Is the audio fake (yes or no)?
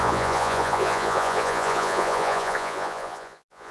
yes